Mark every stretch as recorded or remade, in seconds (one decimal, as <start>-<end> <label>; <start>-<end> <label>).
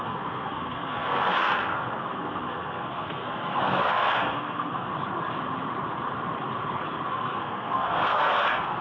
0.0-4.9 remade; 4.9-7.1 recorded; 7.1-8.8 remade